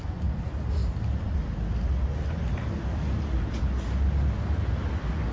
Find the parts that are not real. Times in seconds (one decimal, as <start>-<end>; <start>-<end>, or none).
none